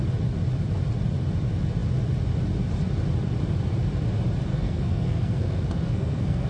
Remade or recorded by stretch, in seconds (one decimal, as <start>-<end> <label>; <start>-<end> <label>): 0.0-4.5 recorded; 4.5-6.5 remade